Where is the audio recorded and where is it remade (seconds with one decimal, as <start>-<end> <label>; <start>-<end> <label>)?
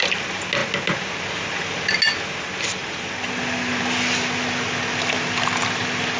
0.0-6.2 recorded